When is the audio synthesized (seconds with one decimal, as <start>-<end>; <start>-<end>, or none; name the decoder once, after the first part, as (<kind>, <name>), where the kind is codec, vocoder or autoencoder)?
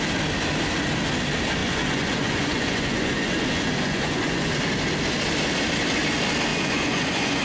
1.6-4.5 (vocoder, Vocos); 6.5-7.4